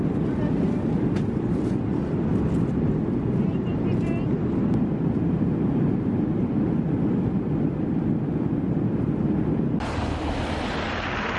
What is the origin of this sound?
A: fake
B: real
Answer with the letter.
A